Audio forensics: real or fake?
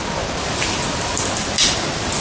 real